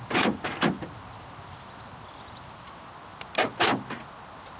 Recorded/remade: recorded